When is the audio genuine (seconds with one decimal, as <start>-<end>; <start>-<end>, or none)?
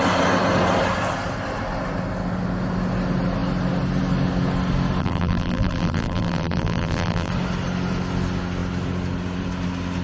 0.0-5.0; 7.3-10.0